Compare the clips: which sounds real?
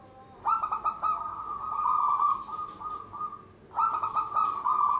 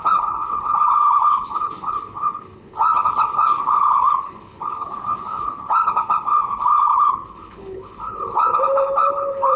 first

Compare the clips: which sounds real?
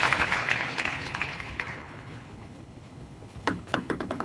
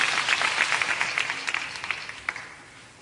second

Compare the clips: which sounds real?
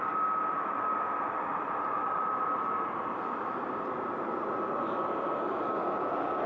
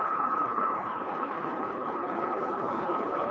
first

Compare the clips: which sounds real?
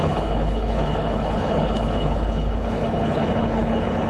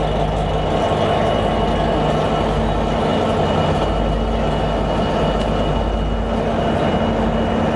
second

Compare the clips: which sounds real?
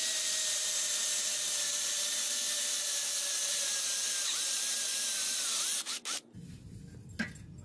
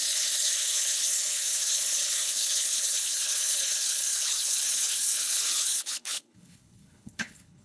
first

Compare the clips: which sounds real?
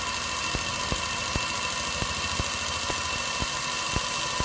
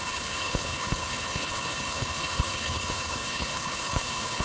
first